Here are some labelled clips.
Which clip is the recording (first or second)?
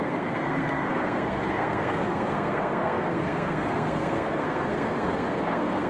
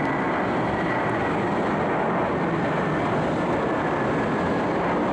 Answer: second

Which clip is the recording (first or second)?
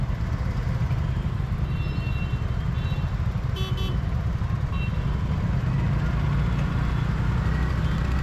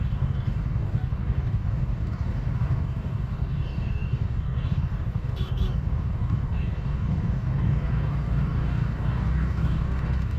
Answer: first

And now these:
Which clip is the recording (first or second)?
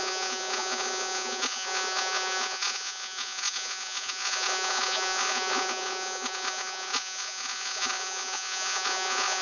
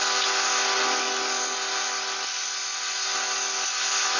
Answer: second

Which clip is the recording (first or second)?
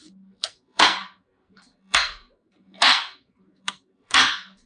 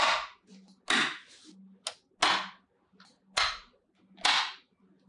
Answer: second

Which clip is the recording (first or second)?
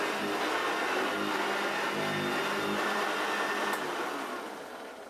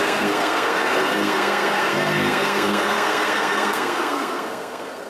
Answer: first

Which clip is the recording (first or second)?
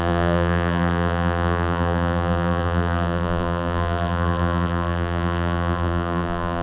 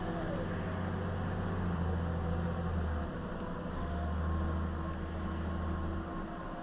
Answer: second